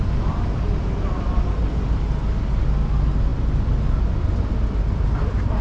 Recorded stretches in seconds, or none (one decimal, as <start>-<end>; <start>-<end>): 0.0-5.6

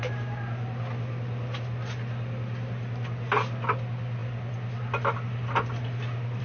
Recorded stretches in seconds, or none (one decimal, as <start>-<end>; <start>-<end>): 0.0-6.4

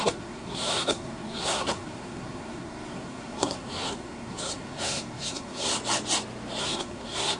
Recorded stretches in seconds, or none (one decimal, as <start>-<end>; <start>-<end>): 5.7-6.6

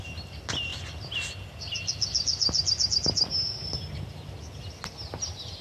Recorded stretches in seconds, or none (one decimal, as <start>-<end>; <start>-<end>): 0.0-5.6

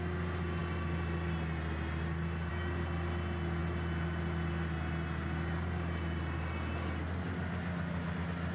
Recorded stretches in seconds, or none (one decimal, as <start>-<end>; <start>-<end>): 0.0-8.5